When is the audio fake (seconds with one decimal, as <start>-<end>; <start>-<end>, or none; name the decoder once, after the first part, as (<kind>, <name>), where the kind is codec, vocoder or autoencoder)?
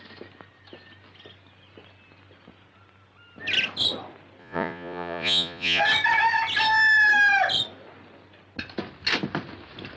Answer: 4.4-5.8 (vocoder, Vocos)